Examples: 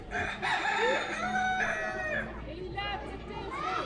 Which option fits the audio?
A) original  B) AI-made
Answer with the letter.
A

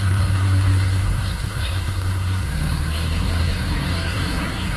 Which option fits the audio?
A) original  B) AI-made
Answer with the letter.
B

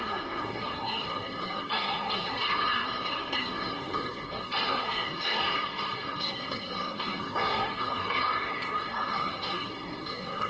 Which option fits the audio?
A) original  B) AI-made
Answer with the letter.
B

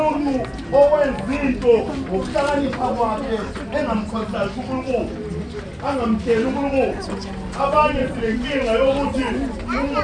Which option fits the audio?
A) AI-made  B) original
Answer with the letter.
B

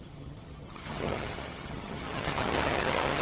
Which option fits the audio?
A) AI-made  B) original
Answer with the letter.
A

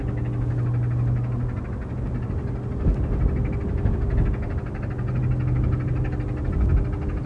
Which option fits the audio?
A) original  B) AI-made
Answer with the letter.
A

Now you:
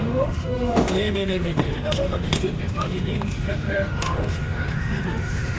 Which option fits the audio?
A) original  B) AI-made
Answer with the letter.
B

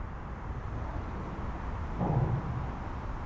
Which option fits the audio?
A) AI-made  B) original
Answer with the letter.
A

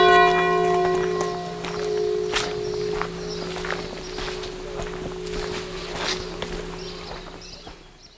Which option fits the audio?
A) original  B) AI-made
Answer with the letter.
A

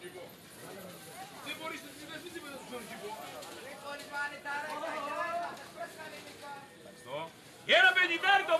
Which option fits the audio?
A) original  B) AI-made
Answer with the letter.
A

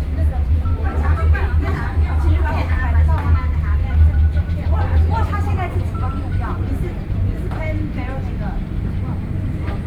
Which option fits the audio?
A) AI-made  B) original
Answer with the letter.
A